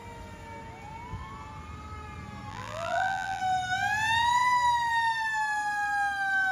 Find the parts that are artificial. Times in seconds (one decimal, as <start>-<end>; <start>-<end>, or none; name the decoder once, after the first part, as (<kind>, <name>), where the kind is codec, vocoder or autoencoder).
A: 2.5-3.4 (vocoder, BigVGAN v2)